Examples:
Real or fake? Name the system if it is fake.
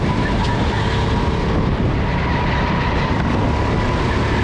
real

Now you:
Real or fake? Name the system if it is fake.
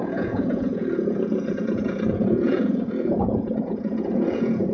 fake, vocoder, Vocos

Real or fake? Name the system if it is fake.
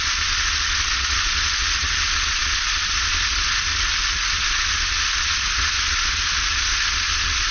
real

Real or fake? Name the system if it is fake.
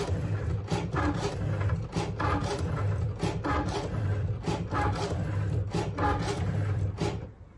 real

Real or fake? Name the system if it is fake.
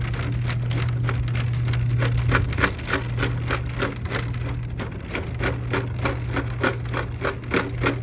real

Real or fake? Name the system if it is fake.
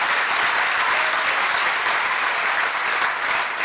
real